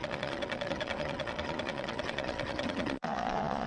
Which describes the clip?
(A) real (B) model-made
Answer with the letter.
B